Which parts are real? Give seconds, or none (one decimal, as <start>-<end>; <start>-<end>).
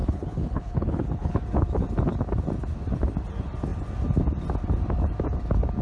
1.4-5.8